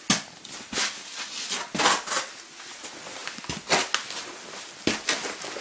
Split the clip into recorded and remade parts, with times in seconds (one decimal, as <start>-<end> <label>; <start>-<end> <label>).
0.0-5.6 recorded